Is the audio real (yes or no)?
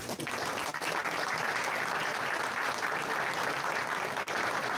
no